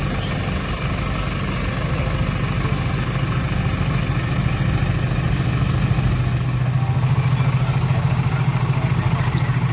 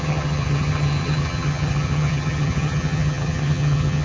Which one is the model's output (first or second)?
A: second